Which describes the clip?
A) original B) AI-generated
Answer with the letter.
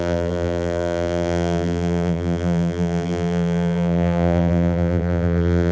B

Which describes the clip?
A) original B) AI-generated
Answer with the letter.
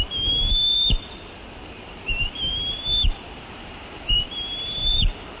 B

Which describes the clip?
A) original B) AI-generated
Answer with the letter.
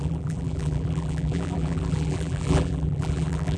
B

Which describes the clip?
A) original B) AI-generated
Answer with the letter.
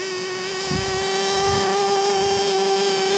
A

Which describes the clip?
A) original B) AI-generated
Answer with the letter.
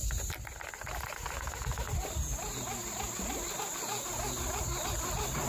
A